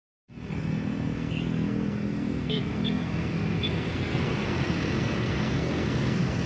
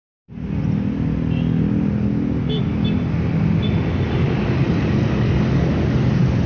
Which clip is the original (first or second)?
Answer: second